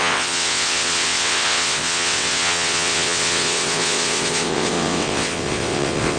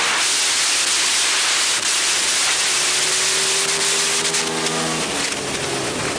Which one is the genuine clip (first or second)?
second